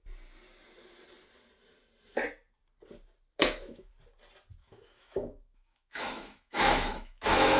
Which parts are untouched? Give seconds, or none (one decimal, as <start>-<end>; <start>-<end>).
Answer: 0.0-3.4; 3.9-4.6